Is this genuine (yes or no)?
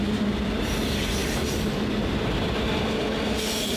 yes